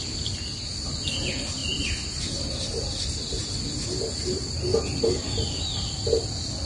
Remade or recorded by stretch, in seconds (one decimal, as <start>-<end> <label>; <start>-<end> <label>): 0.0-6.7 recorded

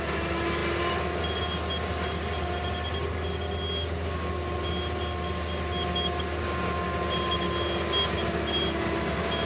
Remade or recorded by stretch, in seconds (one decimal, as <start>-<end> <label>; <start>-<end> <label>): 0.0-9.5 recorded

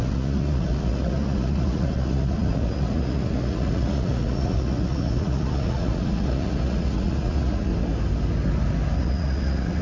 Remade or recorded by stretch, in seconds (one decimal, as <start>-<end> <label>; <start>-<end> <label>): 0.0-7.7 remade; 7.7-9.0 recorded; 9.0-9.8 remade